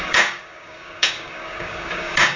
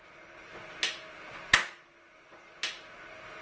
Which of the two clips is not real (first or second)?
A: first